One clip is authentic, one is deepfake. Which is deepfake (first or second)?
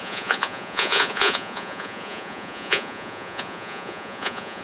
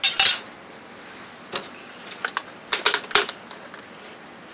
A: first